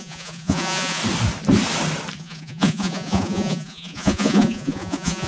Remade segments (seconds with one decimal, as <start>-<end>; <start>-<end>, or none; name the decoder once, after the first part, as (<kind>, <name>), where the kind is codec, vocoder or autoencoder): 0.0-1.0 (vocoder, Vocos); 2.2-5.3

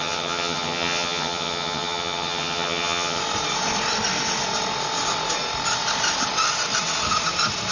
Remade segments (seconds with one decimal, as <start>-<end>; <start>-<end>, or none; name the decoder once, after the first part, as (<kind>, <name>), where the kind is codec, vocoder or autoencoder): 0.0-3.2 (vocoder, HiFi-GAN)